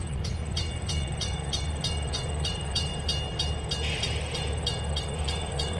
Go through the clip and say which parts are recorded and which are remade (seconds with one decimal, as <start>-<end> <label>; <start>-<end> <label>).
0.0-2.9 remade; 2.9-4.9 recorded; 4.9-5.8 remade